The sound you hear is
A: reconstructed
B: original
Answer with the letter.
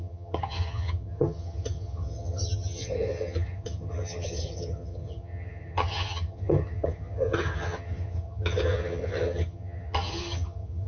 A